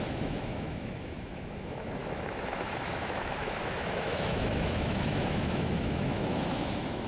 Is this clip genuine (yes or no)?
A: no